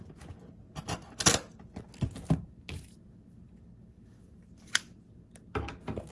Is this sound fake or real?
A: real